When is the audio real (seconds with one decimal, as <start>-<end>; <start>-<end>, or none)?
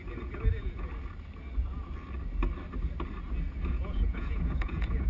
0.9-3.7